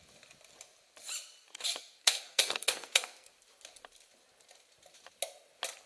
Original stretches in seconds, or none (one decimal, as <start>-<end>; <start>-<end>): 0.0-2.0; 3.3-5.9